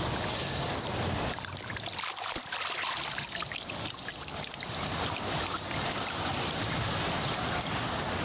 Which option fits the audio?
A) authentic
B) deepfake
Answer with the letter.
A